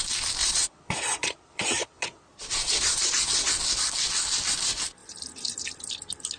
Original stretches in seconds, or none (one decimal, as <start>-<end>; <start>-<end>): 0.0-0.4; 3.5-6.4